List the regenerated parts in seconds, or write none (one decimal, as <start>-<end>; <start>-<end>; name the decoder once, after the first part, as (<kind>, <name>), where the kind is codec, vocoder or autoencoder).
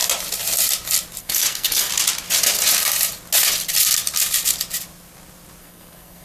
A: 1.2-1.9 (codec, SNAC); 5.6-6.2